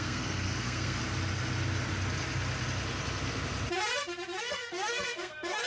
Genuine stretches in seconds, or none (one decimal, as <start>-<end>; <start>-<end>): 1.0-4.4